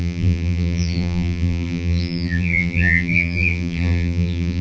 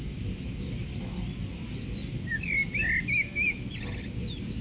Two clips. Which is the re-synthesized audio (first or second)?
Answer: first